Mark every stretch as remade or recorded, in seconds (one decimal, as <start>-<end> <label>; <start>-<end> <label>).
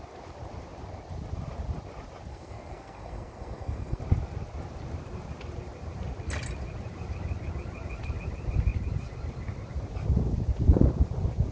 0.0-2.3 recorded; 2.3-4.0 remade; 4.0-11.5 recorded